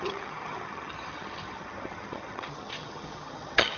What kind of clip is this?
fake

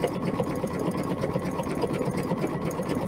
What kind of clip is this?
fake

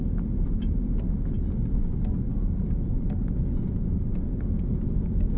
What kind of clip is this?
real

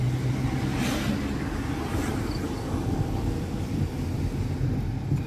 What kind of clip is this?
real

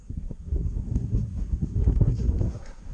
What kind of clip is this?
fake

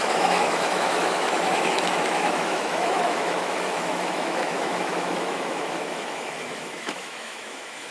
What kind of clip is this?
fake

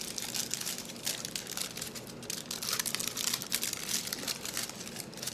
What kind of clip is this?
real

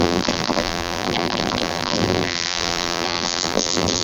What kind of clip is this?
fake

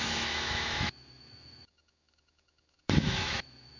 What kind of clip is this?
fake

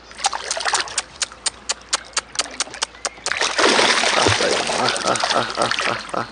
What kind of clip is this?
real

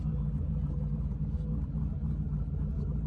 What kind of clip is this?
real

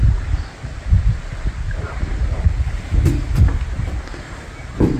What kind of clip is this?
real